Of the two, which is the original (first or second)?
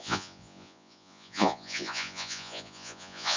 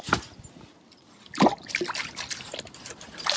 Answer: second